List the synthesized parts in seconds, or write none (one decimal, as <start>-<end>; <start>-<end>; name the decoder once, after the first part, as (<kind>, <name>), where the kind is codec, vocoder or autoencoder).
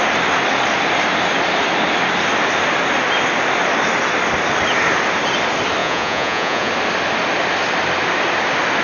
5.8-6.7 (vocoder, Vocos)